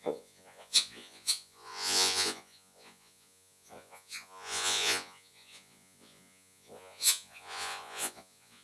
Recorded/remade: remade